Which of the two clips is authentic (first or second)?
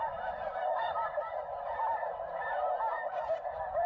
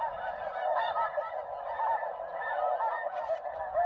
second